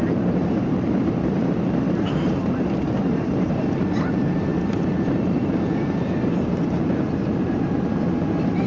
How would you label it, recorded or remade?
remade